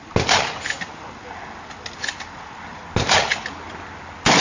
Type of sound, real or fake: real